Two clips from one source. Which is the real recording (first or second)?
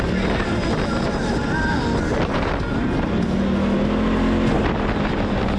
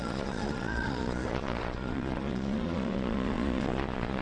first